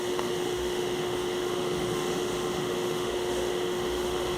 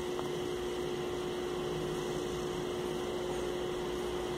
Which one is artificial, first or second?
first